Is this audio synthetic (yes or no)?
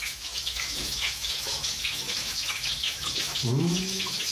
yes